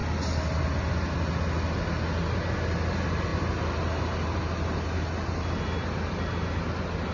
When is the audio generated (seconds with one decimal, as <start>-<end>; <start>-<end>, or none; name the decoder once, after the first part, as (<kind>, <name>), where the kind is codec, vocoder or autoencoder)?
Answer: none